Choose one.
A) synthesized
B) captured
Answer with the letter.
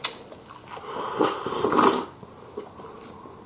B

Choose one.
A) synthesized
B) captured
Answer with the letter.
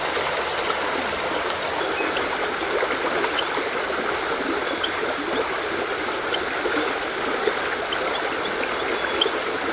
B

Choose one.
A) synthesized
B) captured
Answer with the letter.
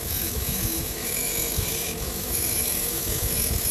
A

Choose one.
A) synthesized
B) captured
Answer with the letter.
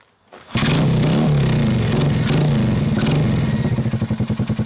B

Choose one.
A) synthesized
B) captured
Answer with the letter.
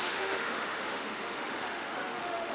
A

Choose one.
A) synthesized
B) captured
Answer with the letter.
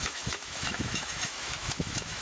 A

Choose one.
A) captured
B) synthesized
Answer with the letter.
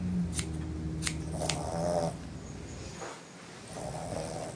A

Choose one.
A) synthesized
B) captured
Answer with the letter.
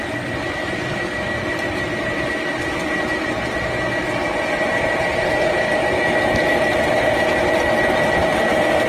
B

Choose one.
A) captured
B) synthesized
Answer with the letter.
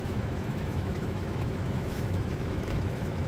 B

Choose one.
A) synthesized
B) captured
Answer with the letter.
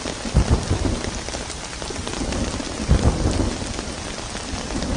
B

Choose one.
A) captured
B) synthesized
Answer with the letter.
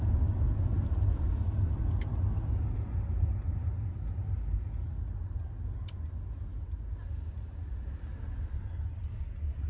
A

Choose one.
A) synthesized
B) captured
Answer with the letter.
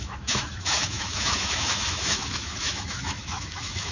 A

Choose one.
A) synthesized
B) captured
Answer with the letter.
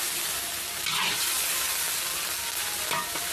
B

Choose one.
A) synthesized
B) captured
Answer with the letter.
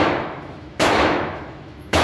A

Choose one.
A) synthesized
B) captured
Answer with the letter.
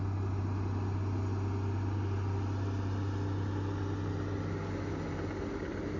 B